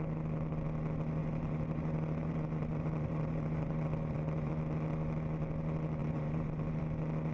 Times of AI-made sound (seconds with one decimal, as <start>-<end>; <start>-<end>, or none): 1.2-4.5; 6.0-6.8